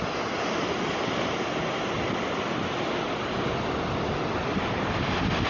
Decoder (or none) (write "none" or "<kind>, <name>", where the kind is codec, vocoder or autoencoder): none